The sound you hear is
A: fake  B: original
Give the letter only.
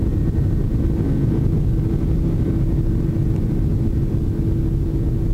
B